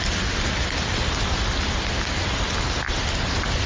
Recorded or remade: recorded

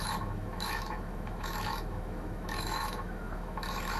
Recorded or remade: remade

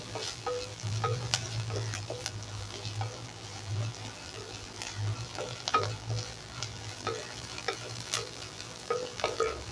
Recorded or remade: remade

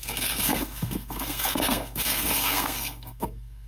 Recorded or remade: remade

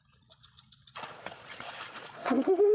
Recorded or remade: remade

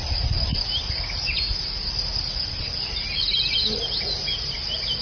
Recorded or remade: recorded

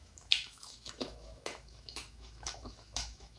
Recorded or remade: remade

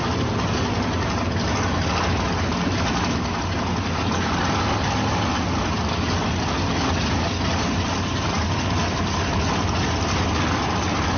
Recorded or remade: recorded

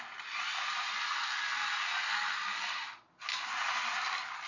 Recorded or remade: recorded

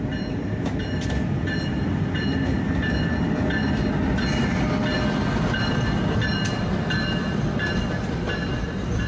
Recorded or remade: recorded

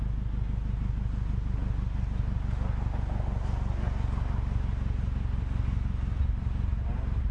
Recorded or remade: recorded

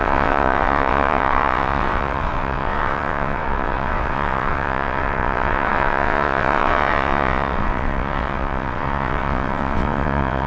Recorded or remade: remade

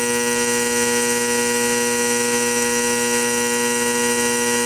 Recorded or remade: recorded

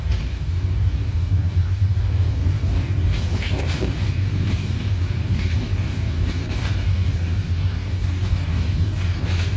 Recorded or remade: remade